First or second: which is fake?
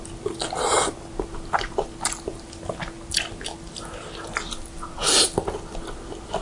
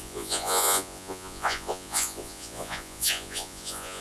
second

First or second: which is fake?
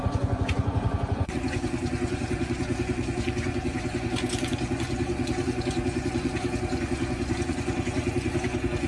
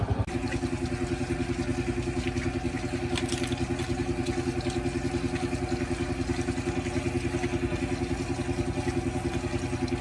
first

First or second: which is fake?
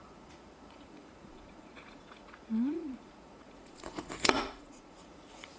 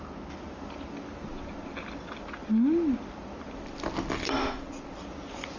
first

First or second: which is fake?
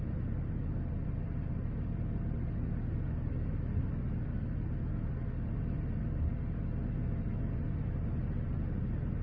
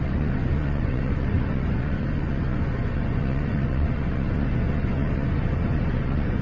second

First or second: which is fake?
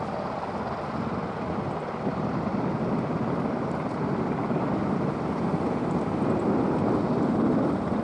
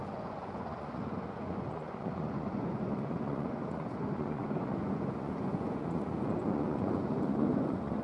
second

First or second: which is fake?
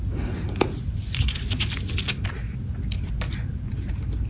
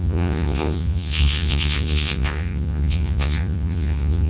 second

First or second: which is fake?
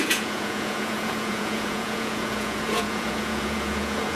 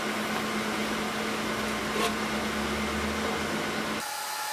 first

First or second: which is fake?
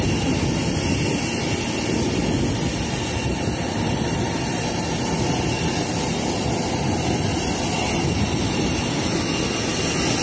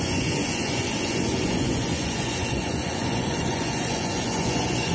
second